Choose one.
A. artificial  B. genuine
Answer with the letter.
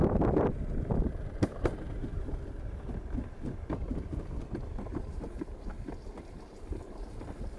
B